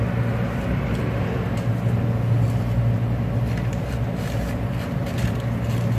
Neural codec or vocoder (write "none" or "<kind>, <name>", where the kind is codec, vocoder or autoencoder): none